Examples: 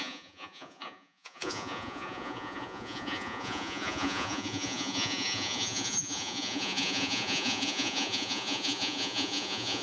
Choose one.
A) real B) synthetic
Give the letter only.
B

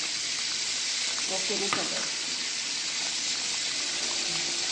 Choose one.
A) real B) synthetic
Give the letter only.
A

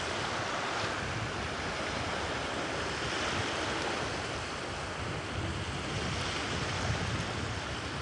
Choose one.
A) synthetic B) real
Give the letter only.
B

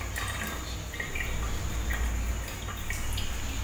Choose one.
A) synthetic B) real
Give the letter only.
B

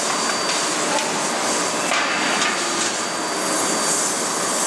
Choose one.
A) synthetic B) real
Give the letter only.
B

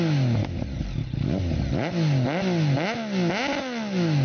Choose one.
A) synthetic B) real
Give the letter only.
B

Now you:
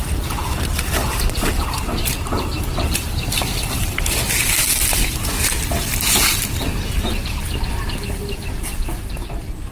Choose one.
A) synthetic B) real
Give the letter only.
B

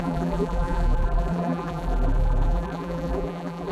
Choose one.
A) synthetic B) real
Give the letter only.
A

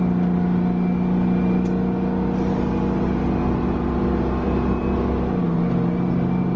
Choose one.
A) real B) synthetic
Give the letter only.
A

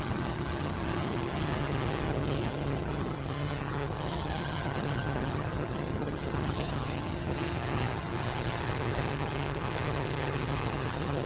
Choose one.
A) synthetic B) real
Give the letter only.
A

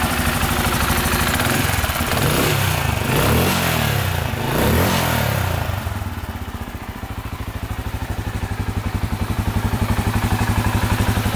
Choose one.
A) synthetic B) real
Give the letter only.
A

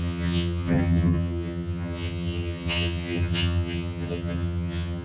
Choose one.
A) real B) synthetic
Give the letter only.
B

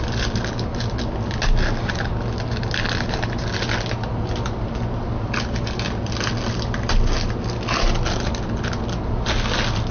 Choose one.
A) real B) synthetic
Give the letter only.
A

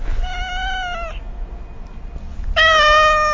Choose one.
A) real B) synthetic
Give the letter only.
A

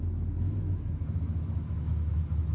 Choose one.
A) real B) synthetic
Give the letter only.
B